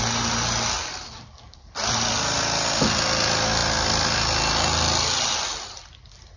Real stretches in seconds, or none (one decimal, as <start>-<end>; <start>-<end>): 0.0-6.4